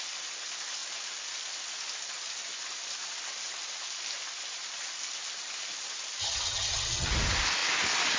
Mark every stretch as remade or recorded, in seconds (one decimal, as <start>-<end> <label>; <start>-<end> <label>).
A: 0.0-6.2 recorded; 6.2-7.1 remade; 7.1-8.2 recorded